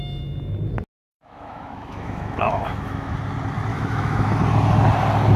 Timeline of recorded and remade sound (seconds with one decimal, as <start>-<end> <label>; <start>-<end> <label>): 0.0-1.0 recorded; 1.0-3.2 remade; 3.2-3.7 recorded; 3.7-4.3 remade; 4.3-5.4 recorded